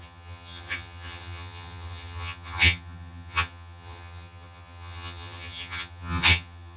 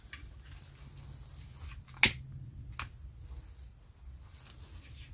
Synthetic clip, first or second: first